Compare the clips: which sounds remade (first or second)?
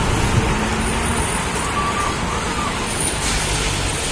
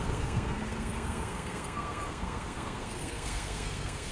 second